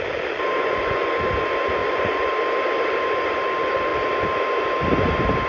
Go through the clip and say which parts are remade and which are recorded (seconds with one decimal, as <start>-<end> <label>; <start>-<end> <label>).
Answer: 0.0-0.6 recorded; 0.6-1.1 remade; 1.1-1.8 recorded; 1.8-2.3 remade; 2.3-5.5 recorded